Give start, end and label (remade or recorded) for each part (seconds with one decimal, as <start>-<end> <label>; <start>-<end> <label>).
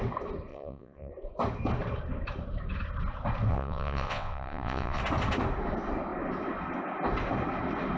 0.0-0.5 recorded; 0.5-1.1 remade; 1.1-3.5 recorded; 3.5-5.0 remade; 5.0-8.0 recorded